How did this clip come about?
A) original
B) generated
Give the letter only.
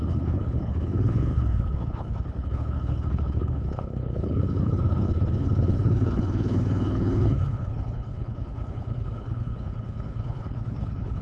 B